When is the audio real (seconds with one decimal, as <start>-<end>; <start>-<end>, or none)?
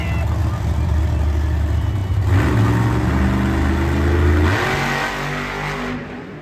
0.0-0.4; 1.1-6.4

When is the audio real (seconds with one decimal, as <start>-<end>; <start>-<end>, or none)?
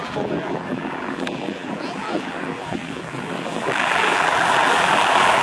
none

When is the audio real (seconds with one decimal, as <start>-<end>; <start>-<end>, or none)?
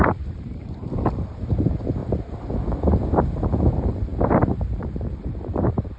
2.0-3.3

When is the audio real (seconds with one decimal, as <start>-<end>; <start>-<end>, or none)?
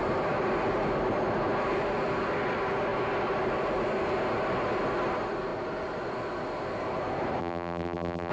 0.0-7.4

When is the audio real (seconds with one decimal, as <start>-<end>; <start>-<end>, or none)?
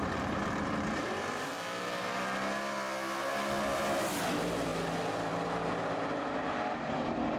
1.5-4.3; 4.7-5.3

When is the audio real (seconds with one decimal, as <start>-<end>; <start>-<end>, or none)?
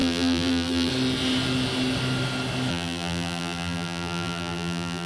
0.9-2.7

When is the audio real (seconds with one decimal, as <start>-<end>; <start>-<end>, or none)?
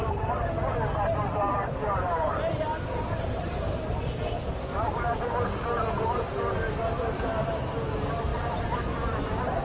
0.0-1.8; 3.7-9.6